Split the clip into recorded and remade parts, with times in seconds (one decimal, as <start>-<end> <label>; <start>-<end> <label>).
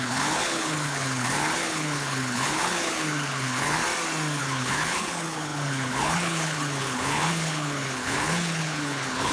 0.0-3.8 remade; 3.8-4.4 recorded; 4.4-9.3 remade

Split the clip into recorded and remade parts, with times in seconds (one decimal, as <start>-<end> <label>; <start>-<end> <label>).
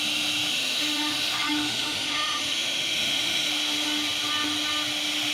0.0-0.5 recorded; 0.5-3.5 remade; 3.5-5.3 recorded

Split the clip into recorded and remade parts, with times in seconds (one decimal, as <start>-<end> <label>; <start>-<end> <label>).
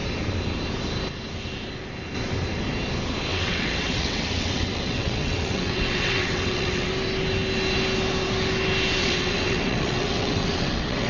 0.0-3.3 recorded; 3.3-6.9 remade; 6.9-9.0 recorded; 9.0-11.1 remade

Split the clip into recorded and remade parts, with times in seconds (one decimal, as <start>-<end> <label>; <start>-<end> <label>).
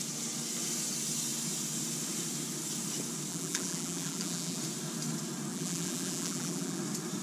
0.0-3.3 recorded; 3.3-4.6 remade; 4.6-5.5 recorded; 5.5-6.8 remade; 6.8-7.2 recorded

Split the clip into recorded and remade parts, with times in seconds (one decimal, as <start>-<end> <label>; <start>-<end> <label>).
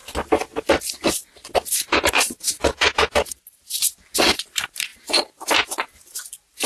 0.0-0.7 recorded; 0.7-6.7 remade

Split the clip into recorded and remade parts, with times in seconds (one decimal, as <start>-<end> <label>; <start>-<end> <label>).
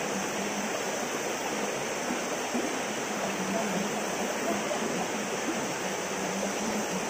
0.0-7.1 recorded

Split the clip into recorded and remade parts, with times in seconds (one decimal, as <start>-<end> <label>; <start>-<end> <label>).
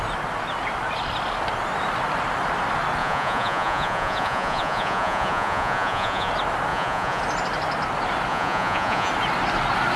0.0-3.0 recorded; 3.0-6.3 remade; 6.3-6.7 recorded; 6.7-7.2 remade; 7.2-8.3 recorded; 8.3-9.1 remade; 9.1-10.0 recorded